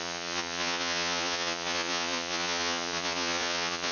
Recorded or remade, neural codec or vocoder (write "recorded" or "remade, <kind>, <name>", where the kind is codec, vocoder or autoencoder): remade, vocoder, Vocos